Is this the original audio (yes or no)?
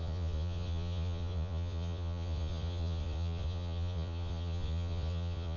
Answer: no